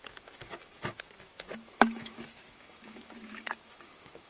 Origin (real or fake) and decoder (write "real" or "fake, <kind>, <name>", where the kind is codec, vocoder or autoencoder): fake, autoencoder, DAC-VAE